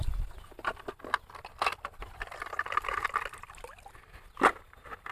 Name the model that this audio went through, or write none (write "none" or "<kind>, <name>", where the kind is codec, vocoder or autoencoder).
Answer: none